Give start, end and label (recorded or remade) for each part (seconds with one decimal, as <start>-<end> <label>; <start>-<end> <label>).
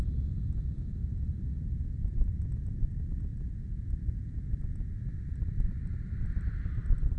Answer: 0.0-7.2 recorded